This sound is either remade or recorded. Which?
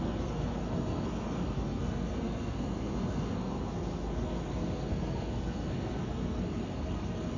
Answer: remade